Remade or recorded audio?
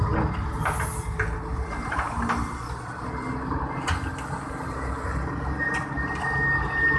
recorded